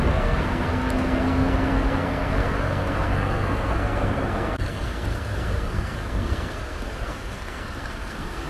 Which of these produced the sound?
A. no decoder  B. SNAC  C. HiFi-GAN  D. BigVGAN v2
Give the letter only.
B